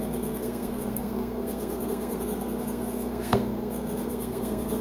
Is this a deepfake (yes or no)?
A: yes